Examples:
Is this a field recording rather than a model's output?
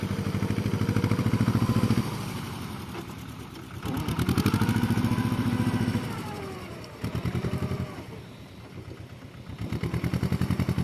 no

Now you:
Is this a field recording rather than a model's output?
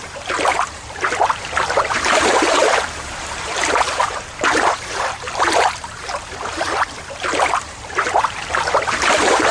no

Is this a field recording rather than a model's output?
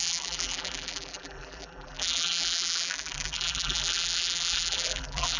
no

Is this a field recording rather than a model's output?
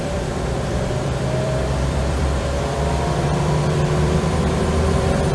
no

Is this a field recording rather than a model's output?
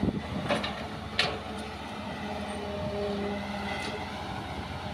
yes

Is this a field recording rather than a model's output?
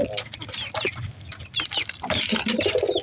yes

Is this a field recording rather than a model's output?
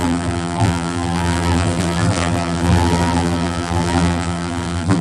no